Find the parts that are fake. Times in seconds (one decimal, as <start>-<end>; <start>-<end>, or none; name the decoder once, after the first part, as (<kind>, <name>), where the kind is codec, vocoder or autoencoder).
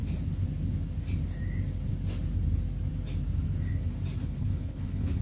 4.2-5.2 (codec, HILCodec)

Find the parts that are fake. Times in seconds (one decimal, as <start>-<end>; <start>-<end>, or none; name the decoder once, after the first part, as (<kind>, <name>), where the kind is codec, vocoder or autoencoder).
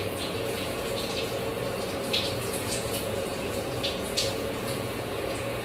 0.0-1.5 (vocoder, Vocos); 2.4-5.6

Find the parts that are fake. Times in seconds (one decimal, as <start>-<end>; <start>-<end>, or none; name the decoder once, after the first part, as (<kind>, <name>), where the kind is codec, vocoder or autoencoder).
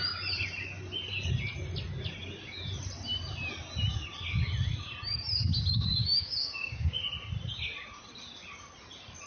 5.9-7.0 (codec, DAC)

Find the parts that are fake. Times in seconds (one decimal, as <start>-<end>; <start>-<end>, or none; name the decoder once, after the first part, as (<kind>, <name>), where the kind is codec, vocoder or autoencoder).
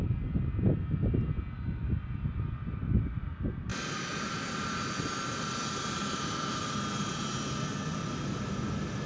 none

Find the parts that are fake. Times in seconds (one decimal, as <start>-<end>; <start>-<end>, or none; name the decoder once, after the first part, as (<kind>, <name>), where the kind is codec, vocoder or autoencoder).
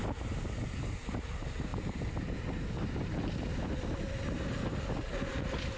none